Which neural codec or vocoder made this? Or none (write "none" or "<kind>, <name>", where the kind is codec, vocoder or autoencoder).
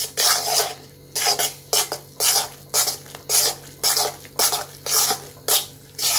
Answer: none